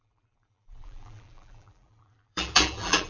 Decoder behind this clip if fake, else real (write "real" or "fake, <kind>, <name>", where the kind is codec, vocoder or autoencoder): fake, vocoder, BigVGAN v2